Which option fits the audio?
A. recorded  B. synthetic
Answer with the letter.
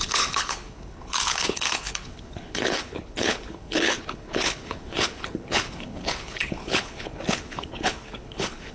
B